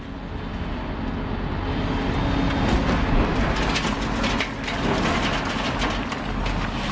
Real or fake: real